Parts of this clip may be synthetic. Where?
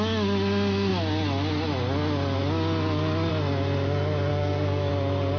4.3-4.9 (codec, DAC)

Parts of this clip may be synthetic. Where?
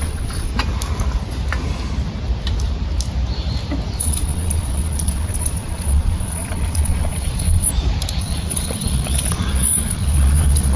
0.0-0.5 (vocoder, Vocos); 4.0-7.7; 8.2-10.8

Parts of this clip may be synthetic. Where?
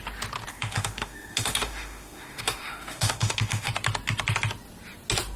0.5-3.7 (autoencoder, DAC-VAE)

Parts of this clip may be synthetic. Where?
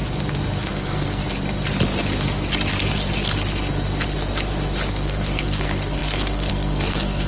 0.6-1.2 (codec, SNAC); 4.9-7.3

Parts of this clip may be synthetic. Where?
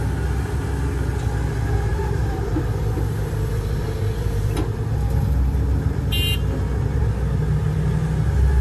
1.9-7.0 (vocoder, BigVGAN v2)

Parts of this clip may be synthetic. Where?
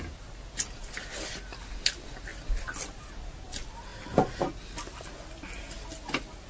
none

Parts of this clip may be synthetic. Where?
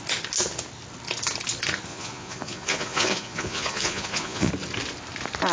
1.9-4.5 (vocoder, Vocos)